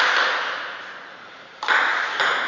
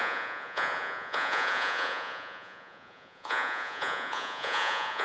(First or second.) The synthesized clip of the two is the second